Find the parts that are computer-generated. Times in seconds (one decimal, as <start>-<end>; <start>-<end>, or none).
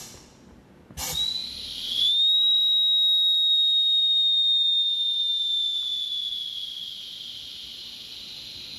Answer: none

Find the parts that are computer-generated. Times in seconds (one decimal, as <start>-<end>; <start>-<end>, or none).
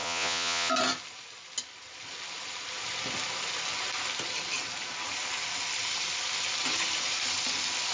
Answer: 0.0-0.7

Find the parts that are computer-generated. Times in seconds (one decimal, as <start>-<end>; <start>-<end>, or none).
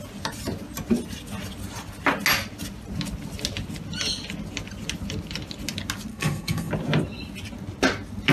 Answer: 6.1-6.7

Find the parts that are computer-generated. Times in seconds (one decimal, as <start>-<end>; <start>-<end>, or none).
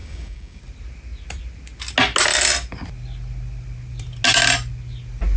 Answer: 0.0-0.6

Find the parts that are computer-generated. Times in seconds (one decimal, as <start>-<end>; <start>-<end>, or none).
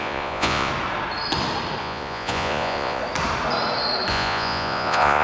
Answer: 0.0-0.7; 1.8-3.0; 4.1-5.2